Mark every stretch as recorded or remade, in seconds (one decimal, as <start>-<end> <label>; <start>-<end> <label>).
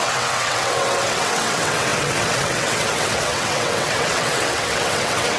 0.0-5.4 remade